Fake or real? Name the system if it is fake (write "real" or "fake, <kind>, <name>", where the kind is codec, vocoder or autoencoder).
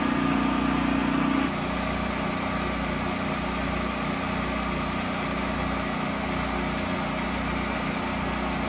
real